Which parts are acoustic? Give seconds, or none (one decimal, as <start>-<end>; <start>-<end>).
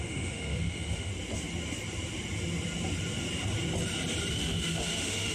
1.1-4.3